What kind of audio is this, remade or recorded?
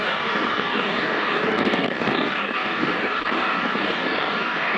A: remade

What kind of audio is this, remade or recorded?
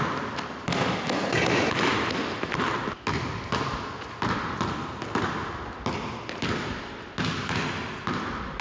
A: recorded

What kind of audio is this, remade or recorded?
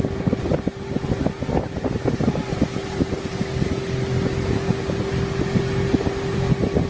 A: recorded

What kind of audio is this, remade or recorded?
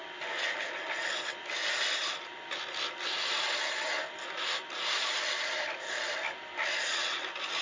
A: recorded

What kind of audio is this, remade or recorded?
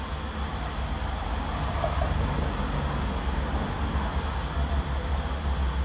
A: recorded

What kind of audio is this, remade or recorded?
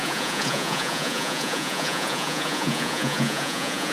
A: remade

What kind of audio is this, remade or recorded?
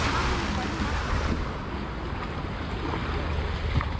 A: recorded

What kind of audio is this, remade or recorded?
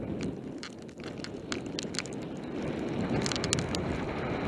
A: recorded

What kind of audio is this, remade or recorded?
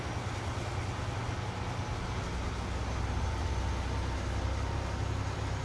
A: recorded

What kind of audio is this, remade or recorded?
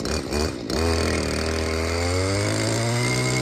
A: recorded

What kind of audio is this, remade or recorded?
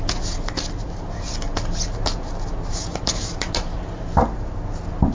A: recorded